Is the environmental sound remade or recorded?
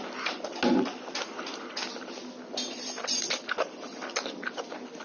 recorded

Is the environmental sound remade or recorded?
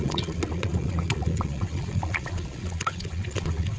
remade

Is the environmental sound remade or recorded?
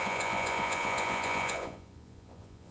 remade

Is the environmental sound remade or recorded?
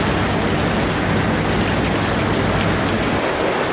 recorded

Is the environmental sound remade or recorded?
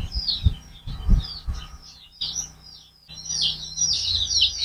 recorded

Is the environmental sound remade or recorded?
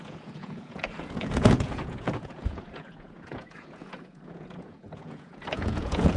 remade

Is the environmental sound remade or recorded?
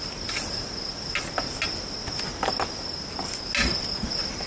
recorded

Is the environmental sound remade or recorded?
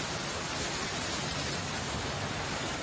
recorded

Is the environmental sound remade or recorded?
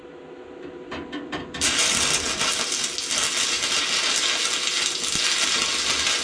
recorded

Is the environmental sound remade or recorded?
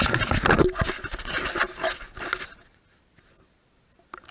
recorded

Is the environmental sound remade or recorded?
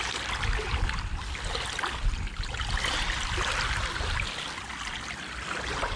recorded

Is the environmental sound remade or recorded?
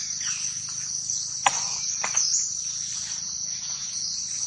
recorded